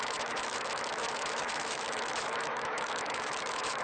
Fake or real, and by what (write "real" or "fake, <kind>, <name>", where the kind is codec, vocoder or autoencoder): fake, autoencoder, DAC-VAE